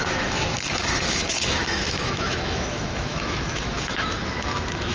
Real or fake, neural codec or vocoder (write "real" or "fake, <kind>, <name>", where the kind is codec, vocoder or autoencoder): fake, autoencoder, DAC-VAE